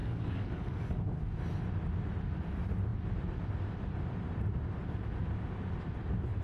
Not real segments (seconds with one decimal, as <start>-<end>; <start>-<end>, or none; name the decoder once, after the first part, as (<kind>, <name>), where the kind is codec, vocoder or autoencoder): 0.0-1.0 (codec, DAC)